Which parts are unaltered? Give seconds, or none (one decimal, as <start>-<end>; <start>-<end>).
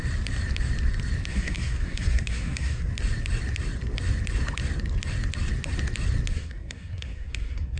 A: 0.0-1.3; 2.9-6.3